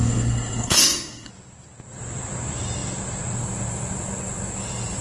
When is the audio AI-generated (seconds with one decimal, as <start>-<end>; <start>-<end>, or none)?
0.0-1.3